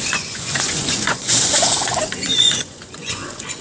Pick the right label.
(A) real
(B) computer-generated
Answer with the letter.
B